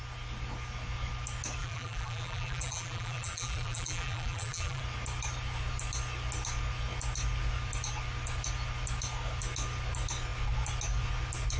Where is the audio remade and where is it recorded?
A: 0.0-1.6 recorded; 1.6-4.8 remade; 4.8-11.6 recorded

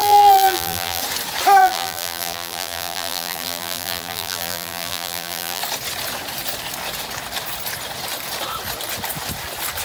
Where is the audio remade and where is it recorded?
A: 0.0-1.0 remade; 1.0-1.6 recorded; 1.6-5.6 remade; 5.6-9.8 recorded